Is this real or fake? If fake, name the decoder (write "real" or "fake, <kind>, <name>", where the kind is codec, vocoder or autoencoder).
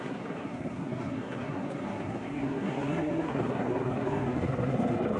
fake, codec, SNAC